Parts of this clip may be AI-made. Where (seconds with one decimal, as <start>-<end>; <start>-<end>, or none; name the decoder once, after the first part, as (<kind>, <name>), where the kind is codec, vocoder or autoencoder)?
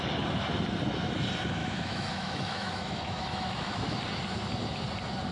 1.6-4.0 (autoencoder, DAC-VAE)